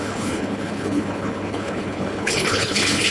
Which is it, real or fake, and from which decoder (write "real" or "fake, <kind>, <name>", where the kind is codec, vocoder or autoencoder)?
fake, codec, HILCodec